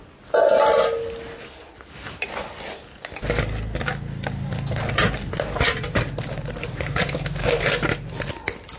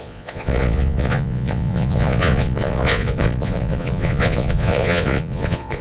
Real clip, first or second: first